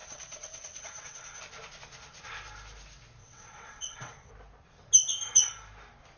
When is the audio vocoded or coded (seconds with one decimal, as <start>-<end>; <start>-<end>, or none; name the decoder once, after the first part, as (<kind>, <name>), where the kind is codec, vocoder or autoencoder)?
0.0-1.4 (vocoder, WaveNeXt); 3.2-4.3